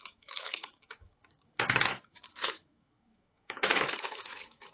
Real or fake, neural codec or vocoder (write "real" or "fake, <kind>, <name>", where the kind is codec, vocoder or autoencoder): fake, autoencoder, DAC-VAE